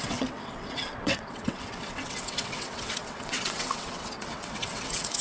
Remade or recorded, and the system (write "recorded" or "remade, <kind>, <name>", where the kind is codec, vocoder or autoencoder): remade, vocoder, WaveNeXt